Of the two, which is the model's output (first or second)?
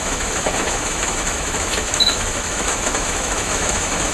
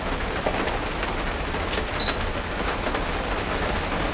first